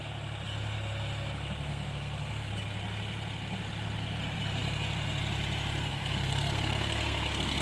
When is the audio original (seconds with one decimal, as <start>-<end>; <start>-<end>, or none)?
0.0-1.7; 2.5-5.9